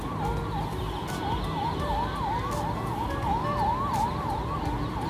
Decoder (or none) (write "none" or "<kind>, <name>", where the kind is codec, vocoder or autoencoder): none